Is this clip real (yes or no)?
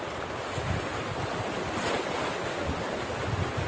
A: yes